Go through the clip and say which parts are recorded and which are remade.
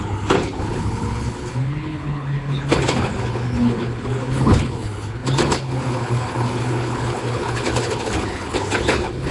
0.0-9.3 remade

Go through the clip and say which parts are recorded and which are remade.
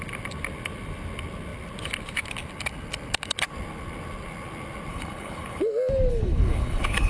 0.0-4.9 recorded; 4.9-5.6 remade; 5.6-6.1 recorded; 6.1-7.1 remade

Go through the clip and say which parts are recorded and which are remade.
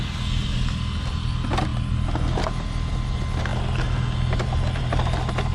0.0-5.5 recorded